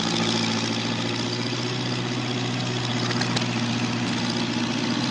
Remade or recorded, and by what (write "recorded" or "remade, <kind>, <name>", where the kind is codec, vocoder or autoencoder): recorded